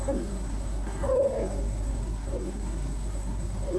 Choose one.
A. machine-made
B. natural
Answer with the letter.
A